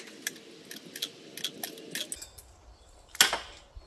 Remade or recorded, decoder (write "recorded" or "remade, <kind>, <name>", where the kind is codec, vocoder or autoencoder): recorded